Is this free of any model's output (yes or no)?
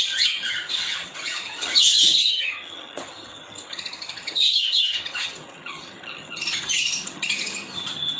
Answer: no